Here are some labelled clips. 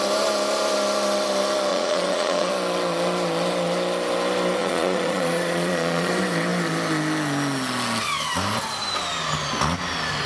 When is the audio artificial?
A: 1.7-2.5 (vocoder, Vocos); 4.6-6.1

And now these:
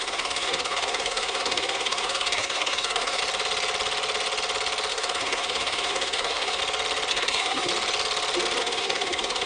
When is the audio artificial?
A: 0.0-3.2 (codec, SNAC); 4.9-6.6; 7.1-7.7; 8.6-9.5

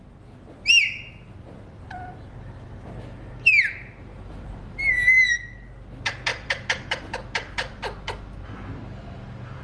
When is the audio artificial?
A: 4.1-4.9 (vocoder, BigVGAN v2); 6.3-9.6